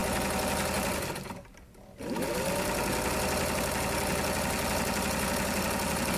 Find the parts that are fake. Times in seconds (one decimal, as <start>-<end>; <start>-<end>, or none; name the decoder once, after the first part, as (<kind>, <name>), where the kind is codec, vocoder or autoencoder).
none